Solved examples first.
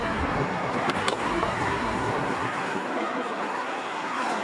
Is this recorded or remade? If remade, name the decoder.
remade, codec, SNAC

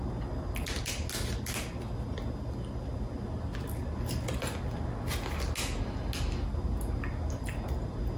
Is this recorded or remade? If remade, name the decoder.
recorded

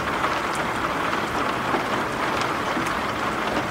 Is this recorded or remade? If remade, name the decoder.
recorded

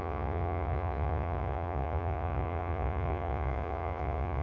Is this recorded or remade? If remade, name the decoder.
remade, vocoder, Vocos